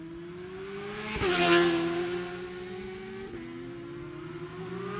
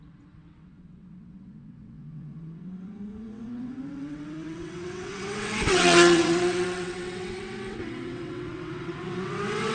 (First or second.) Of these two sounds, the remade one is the second